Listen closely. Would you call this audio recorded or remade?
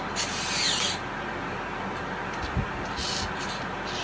recorded